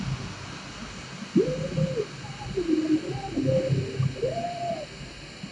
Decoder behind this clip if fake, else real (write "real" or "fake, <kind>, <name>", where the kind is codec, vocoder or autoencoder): real